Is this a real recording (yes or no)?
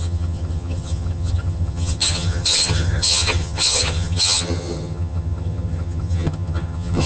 no